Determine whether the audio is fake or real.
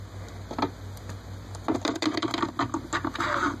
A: real